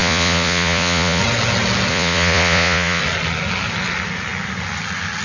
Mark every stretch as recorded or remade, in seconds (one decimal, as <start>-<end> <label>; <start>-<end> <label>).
0.0-1.2 remade; 1.2-1.9 recorded; 1.9-3.0 remade; 3.0-5.2 recorded